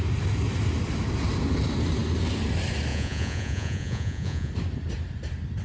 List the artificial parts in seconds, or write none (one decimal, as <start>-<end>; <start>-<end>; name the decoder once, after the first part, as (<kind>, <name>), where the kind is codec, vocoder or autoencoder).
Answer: 2.9-4.5 (vocoder, Vocos)